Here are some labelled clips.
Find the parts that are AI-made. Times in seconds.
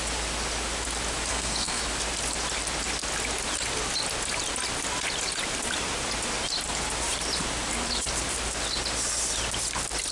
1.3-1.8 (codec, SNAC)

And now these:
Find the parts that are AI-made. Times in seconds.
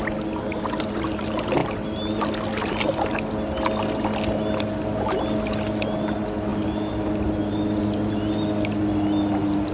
none